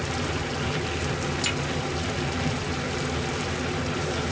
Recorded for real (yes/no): yes